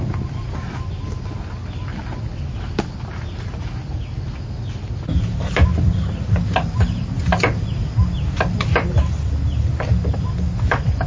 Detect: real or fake real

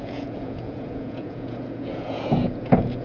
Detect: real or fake fake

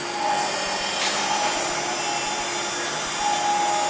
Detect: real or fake real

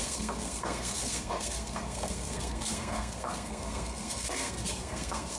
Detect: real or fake fake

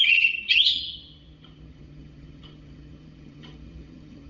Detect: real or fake fake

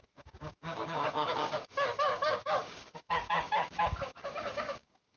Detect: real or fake fake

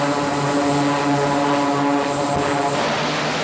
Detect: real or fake real